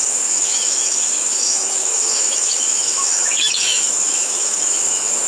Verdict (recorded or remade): remade